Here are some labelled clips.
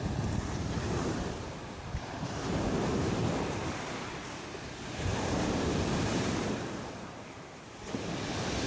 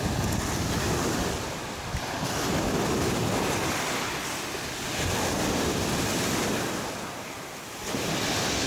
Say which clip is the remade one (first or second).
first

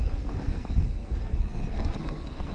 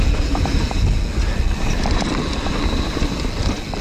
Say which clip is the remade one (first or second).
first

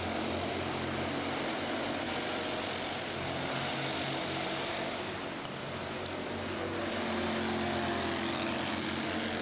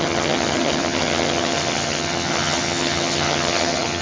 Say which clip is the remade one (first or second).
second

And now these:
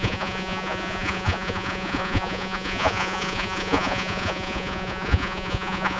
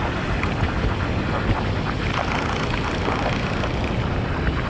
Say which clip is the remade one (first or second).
first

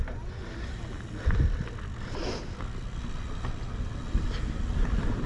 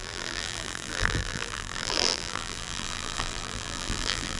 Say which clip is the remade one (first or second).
second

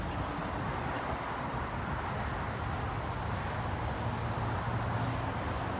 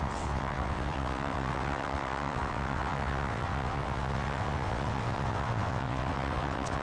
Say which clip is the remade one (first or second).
second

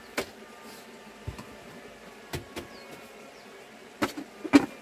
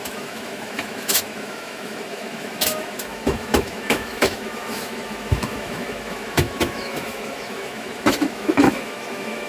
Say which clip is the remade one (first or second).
second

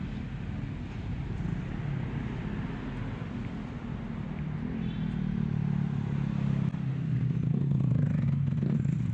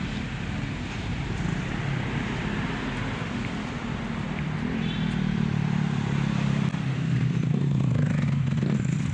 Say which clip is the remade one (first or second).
second